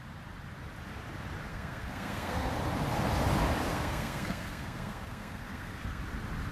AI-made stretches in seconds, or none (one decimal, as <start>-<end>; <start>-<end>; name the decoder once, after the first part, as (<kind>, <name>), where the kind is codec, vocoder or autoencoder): 1.5-2.5 (codec, SNAC); 3.7-6.0